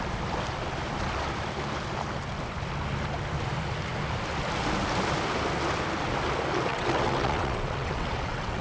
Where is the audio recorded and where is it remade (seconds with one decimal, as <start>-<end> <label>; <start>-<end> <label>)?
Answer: 0.0-6.7 recorded; 6.7-8.6 remade